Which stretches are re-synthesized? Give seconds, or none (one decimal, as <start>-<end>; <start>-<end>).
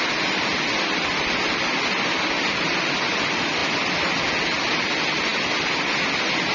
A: none